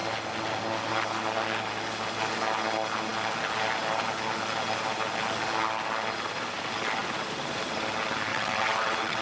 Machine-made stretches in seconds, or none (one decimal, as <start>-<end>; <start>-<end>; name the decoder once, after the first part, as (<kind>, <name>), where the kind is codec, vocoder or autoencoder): 8.3-9.2 (vocoder, WaveNeXt)